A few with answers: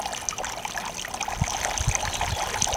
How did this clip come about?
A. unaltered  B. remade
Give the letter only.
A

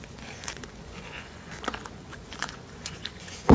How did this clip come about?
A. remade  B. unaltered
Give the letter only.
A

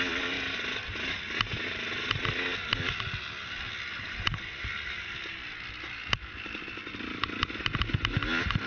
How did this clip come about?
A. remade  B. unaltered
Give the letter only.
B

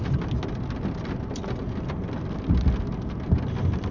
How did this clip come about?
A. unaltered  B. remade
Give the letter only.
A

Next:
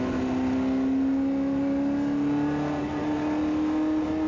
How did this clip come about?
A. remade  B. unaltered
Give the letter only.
B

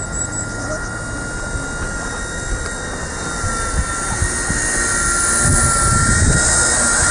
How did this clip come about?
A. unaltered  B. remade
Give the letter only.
A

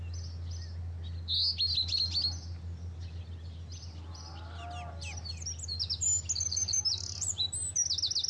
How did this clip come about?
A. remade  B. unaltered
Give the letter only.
B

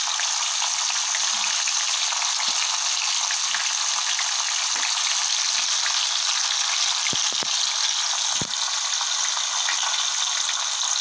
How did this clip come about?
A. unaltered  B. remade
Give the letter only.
A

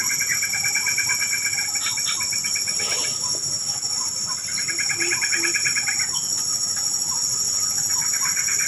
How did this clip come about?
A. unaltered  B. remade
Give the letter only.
A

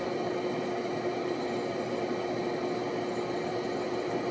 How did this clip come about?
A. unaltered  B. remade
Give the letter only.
A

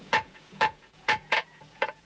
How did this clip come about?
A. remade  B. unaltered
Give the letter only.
A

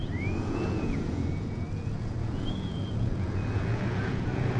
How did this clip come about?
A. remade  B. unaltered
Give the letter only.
A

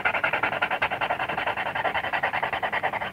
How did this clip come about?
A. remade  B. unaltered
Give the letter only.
B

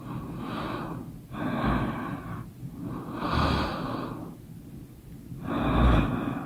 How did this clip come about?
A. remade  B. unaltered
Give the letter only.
B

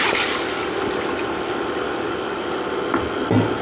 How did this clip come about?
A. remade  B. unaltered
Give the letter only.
B